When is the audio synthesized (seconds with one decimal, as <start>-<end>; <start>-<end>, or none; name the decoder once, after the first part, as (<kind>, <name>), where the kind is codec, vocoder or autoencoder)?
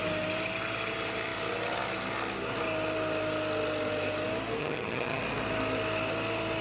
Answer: 4.6-5.2 (vocoder, HiFi-GAN)